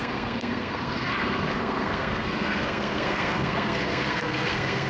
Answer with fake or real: fake